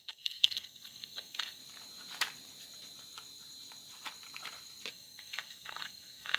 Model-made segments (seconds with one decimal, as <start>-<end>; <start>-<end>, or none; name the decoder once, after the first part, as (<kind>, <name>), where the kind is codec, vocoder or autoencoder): 0.0-1.6 (codec, SNAC); 4.9-6.4